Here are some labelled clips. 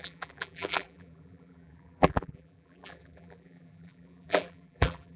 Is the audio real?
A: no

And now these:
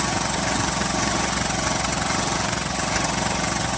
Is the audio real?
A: no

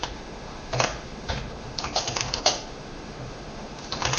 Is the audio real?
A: no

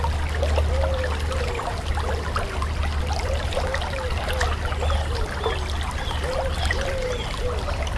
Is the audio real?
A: yes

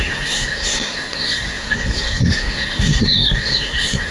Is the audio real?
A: no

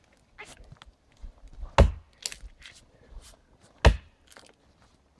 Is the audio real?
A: yes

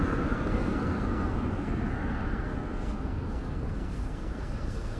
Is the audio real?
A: no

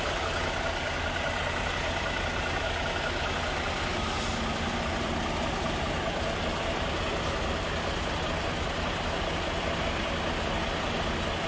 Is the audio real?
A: yes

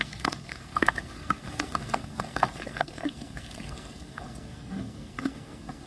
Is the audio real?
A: no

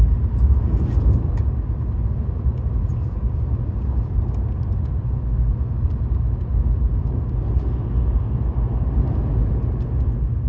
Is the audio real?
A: yes